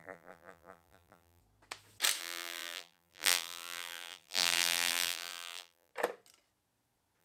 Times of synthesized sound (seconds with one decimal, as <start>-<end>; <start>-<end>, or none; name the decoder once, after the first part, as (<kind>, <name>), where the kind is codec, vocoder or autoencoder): 0.0-1.4 (vocoder, BigVGAN v2); 2.2-5.9